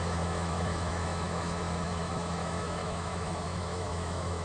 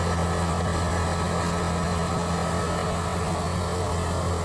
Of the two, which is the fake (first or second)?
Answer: first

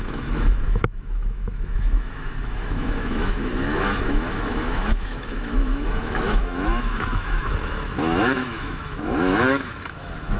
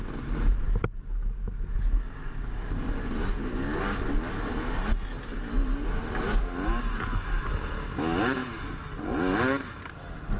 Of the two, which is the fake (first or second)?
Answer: first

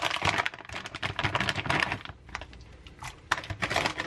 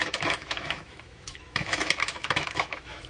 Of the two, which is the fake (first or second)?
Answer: second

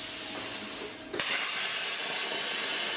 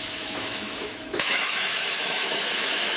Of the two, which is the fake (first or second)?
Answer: second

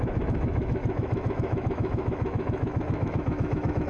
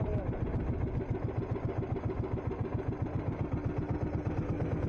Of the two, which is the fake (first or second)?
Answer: first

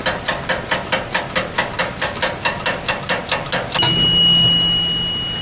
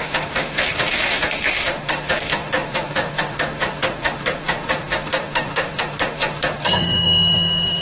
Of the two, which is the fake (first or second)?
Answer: second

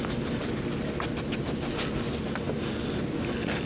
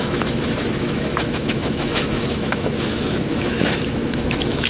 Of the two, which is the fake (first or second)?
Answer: second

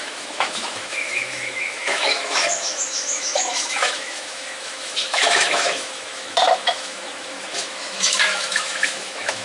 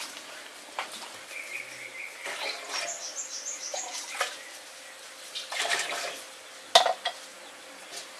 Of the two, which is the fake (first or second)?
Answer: first